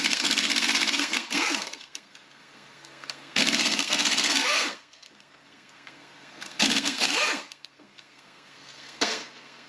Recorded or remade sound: remade